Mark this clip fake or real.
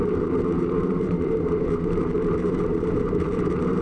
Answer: fake